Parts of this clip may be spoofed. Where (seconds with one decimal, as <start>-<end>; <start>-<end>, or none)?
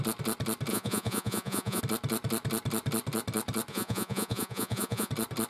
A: 0.7-1.8; 3.7-5.1